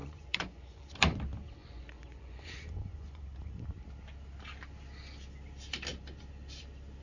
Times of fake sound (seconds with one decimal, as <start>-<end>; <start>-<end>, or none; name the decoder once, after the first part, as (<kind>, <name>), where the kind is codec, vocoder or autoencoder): 0.0-0.8 (vocoder, Vocos); 1.6-3.2